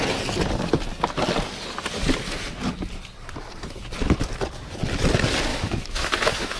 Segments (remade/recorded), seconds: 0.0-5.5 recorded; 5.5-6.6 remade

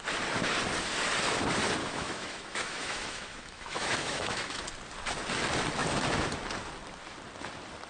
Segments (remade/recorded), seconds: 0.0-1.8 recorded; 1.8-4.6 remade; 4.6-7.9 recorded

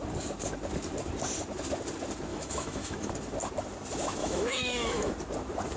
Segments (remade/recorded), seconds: 0.0-2.3 recorded; 2.3-3.1 remade; 3.1-4.2 recorded; 4.2-5.1 remade; 5.1-5.8 recorded